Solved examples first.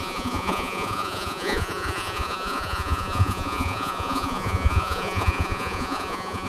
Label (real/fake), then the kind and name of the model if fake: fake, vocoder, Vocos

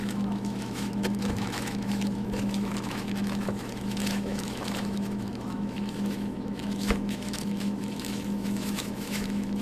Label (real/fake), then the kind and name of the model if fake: fake, autoencoder, DAC-VAE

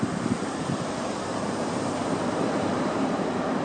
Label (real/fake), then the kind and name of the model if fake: fake, vocoder, BigVGAN v2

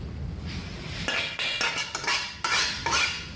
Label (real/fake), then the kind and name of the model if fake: real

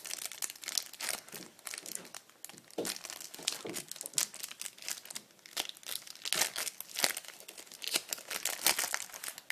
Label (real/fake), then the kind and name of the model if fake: real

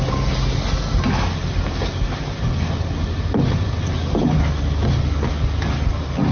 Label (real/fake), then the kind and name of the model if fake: real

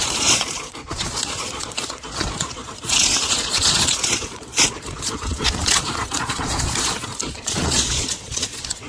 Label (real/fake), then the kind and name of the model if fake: fake, vocoder, Vocos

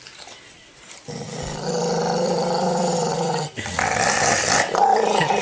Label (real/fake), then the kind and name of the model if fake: real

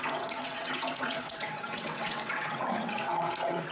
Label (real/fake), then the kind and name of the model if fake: fake, vocoder, WaveNeXt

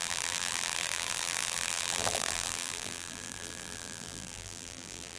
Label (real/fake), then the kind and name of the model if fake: fake, vocoder, BigVGAN v2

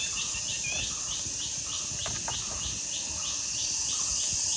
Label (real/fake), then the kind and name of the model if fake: real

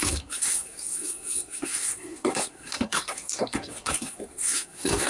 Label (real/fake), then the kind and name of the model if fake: fake, codec, SNAC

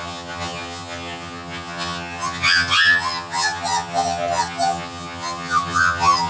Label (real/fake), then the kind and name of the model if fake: fake, vocoder, HiFi-GAN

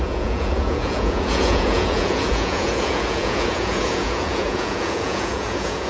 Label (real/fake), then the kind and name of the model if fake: fake, vocoder, Vocos